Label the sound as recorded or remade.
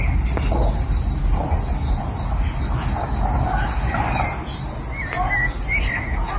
recorded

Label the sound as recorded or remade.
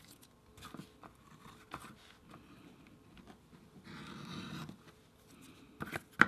recorded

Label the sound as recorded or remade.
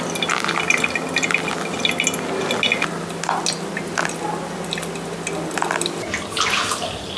recorded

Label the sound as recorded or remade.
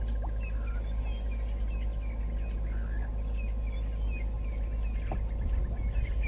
recorded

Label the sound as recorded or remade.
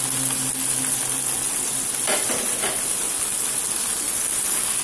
recorded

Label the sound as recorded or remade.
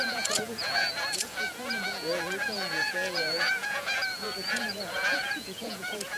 remade